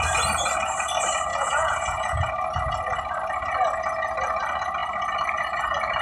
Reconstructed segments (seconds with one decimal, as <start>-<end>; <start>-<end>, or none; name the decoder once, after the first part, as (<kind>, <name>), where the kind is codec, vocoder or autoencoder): 1.3-2.3 (vocoder, Vocos)